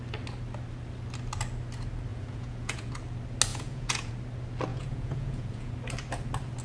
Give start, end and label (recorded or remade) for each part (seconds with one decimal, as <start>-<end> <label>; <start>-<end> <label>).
0.0-2.1 recorded; 2.1-2.9 remade; 2.9-3.5 recorded; 3.5-4.1 remade; 4.1-4.7 recorded; 4.7-5.7 remade; 5.7-6.6 recorded